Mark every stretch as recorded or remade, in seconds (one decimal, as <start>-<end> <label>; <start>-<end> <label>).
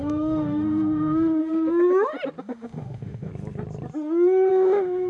0.0-1.4 remade; 1.4-2.4 recorded; 2.4-3.3 remade; 3.3-4.5 recorded; 4.5-5.1 remade